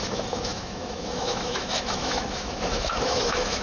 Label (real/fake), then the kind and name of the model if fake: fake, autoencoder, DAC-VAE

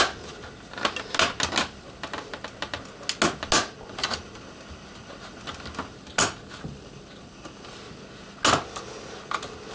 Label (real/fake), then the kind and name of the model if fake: real